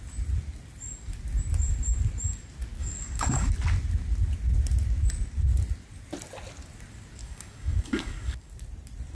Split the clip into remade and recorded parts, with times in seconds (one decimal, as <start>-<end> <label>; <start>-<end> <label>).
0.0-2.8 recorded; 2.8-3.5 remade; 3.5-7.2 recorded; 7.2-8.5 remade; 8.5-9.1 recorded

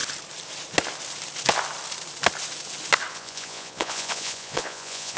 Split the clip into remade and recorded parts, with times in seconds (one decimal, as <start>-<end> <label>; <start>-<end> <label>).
0.0-3.1 recorded; 3.1-5.2 remade

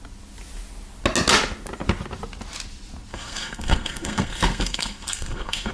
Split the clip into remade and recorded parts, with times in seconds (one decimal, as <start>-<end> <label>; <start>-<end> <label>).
0.0-3.1 recorded; 3.1-5.7 remade

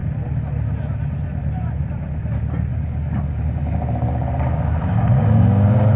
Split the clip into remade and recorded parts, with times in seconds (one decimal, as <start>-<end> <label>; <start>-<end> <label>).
0.0-2.7 recorded; 2.7-6.0 remade

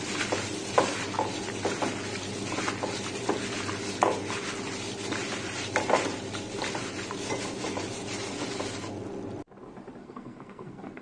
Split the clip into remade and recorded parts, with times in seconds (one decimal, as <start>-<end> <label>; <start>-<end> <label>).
0.0-10.0 recorded; 10.0-11.0 remade

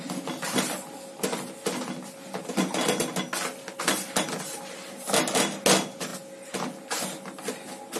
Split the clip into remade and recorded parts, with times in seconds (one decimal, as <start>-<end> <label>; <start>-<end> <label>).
0.0-8.0 recorded